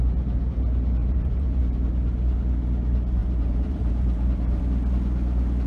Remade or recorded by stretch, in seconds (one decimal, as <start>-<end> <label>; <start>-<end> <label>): 0.0-1.0 recorded; 1.0-1.6 remade; 1.6-3.2 recorded; 3.2-4.6 remade; 4.6-5.7 recorded